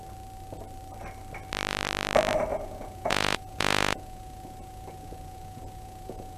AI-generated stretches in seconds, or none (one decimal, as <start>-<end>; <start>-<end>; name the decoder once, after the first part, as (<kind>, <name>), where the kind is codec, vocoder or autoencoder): 2.5-6.4 (vocoder, Vocos)